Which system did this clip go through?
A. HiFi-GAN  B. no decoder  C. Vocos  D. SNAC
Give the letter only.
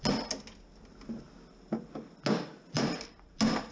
B